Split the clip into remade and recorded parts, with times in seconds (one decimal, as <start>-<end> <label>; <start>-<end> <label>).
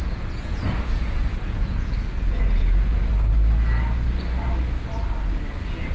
0.0-3.1 remade; 3.1-5.9 recorded